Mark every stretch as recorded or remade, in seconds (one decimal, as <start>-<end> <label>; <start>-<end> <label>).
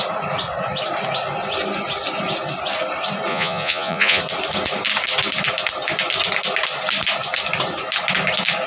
0.0-3.3 recorded; 3.3-4.2 remade; 4.2-8.7 recorded